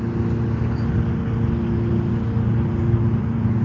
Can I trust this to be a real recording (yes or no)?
yes